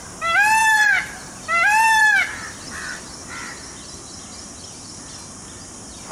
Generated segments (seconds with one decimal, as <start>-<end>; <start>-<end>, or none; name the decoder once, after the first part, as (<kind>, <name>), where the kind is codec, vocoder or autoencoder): 0.6-2.8 (vocoder, BigVGAN v2)